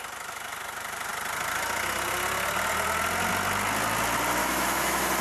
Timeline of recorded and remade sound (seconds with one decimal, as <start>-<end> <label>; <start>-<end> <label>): 0.0-4.4 recorded; 4.4-5.2 remade